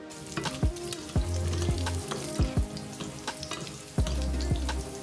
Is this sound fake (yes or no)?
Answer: no